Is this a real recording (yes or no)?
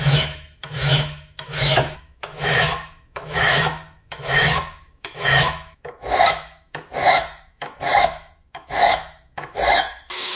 no